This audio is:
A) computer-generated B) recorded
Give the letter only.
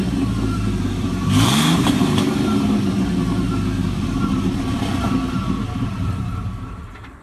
A